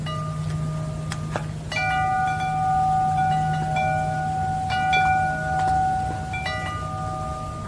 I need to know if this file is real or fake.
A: real